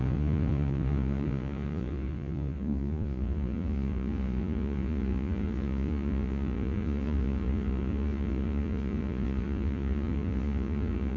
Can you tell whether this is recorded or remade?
remade